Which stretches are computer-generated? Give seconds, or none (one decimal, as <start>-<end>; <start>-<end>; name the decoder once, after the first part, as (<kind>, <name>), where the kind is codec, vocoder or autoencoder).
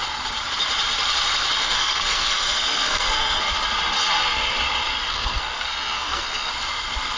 1.6-3.4 (codec, SNAC); 5.1-6.5